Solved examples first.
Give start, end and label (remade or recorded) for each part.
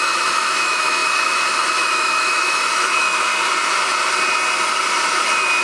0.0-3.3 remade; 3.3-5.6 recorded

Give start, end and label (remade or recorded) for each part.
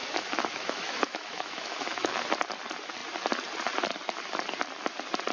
0.0-2.2 remade; 2.2-5.3 recorded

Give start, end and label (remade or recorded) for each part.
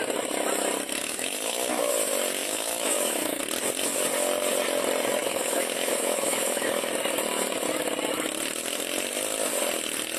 0.0-1.0 recorded; 1.0-1.9 remade; 1.9-2.4 recorded; 2.4-3.4 remade; 3.4-5.2 recorded; 5.2-6.9 remade; 6.9-10.2 recorded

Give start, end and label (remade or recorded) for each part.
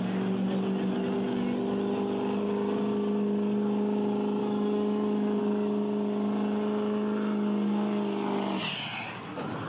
0.0-4.4 recorded; 4.4-5.4 remade; 5.4-9.7 recorded